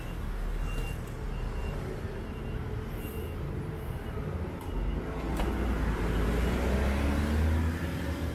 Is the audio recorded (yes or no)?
yes